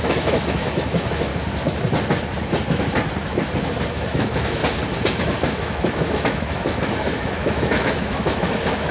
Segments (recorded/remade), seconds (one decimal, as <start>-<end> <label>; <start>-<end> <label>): 0.0-1.3 remade; 1.3-3.9 recorded; 3.9-4.6 remade; 4.6-5.2 recorded; 5.2-8.9 remade